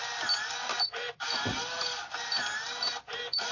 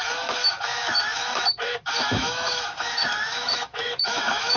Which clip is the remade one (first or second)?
second